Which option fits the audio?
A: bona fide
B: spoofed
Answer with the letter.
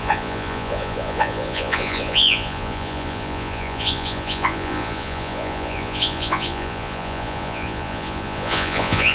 B